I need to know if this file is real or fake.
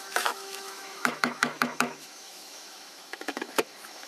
fake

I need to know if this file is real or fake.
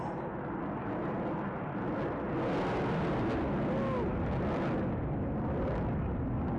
real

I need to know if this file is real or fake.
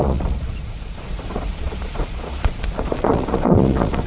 fake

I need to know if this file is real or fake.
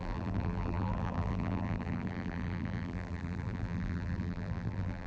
fake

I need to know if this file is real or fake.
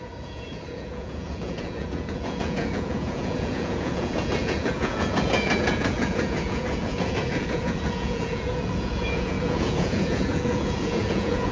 fake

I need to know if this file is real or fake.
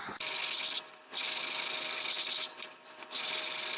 real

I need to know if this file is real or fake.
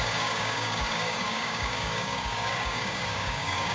fake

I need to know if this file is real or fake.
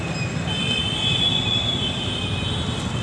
real